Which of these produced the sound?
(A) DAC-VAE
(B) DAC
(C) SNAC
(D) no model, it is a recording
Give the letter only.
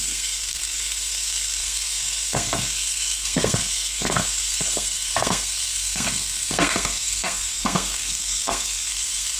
C